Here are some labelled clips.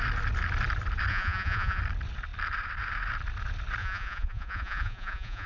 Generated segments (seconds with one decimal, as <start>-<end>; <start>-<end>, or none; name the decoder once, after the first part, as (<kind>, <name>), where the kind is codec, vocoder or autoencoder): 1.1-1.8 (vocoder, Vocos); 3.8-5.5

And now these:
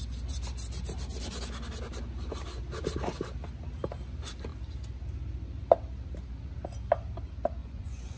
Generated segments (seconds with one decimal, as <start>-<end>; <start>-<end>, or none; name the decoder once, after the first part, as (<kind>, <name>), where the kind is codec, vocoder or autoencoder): 7.6-8.2 (vocoder, Vocos)

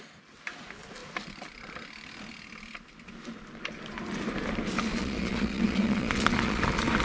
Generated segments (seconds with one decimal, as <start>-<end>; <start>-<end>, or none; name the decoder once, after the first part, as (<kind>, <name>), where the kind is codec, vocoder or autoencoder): 4.9-6.6 (vocoder, Vocos)

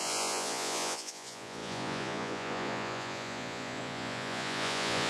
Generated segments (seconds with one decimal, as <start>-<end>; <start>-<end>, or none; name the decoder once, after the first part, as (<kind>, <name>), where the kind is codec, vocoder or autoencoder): 0.0-5.1 (vocoder, Vocos)

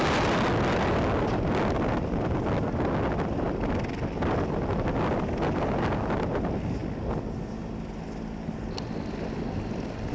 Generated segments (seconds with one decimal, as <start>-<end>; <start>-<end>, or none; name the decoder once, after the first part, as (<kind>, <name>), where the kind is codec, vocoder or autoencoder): none